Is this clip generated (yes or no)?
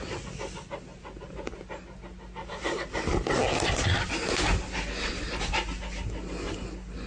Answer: no